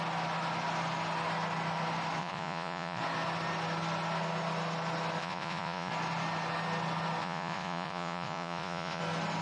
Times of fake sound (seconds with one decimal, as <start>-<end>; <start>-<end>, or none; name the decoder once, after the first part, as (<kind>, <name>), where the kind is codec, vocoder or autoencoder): 2.2-3.0 (vocoder, Vocos); 5.2-5.9; 7.2-9.0